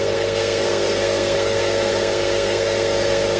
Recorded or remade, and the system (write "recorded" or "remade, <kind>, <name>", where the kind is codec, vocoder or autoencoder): remade, codec, SNAC